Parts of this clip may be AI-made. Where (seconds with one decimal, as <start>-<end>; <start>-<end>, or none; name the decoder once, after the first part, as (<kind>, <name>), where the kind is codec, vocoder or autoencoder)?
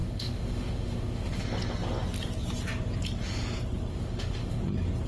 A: 0.0-1.3 (autoencoder, DAC-VAE); 3.9-4.6